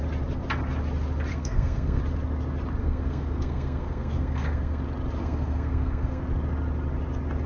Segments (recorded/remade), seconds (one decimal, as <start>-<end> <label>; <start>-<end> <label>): 0.0-1.3 recorded; 1.3-2.0 remade; 2.0-2.8 recorded; 2.8-4.8 remade; 4.8-5.2 recorded; 5.2-6.2 remade; 6.2-7.5 recorded